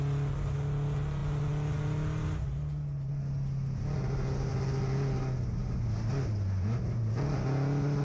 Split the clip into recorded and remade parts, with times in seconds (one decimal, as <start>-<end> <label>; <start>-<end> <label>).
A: 0.0-8.0 recorded